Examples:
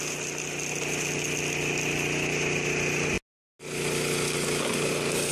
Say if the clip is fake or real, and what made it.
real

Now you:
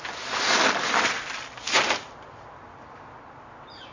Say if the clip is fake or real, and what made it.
real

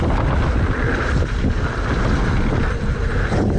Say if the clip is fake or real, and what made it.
real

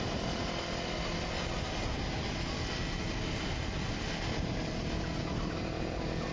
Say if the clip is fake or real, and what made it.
real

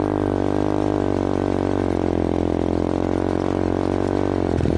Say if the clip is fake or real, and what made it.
real